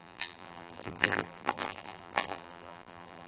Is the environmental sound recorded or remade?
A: remade